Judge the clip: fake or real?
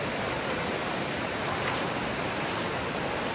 real